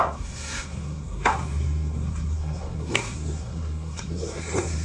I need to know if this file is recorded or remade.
remade